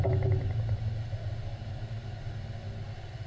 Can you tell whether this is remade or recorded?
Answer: recorded